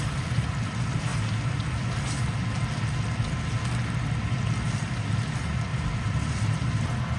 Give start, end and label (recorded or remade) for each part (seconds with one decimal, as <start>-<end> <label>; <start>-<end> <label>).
0.0-1.1 remade; 1.1-4.3 recorded; 4.3-7.2 remade